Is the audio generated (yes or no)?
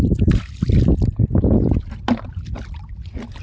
no